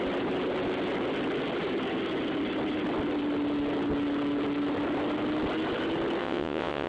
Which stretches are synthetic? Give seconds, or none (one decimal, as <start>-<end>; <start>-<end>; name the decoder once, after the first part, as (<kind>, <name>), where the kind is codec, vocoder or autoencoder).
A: 6.2-6.9 (vocoder, WaveNeXt)